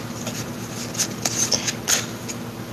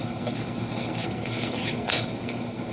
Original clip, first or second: first